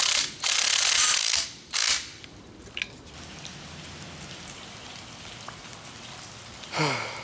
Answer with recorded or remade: recorded